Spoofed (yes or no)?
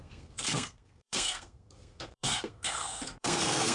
yes